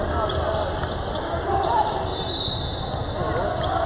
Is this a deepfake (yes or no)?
no